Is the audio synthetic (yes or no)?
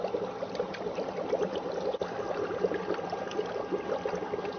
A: no